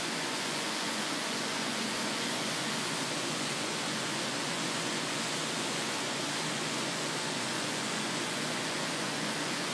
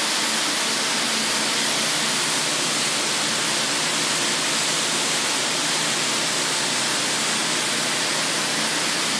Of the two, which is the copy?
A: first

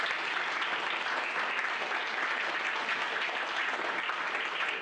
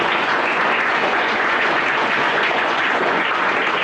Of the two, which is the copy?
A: second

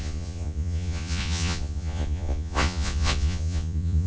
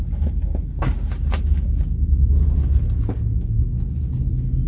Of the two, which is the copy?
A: first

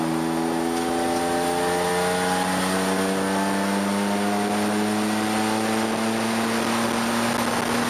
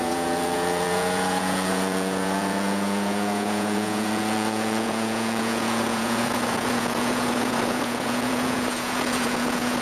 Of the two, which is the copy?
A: second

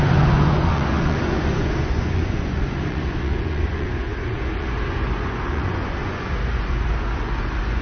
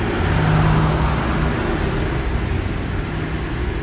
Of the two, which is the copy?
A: first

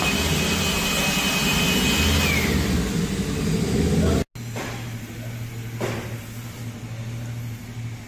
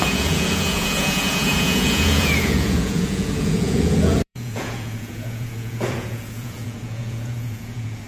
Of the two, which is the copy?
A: second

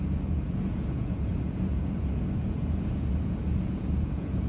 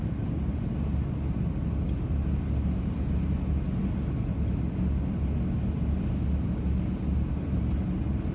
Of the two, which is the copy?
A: first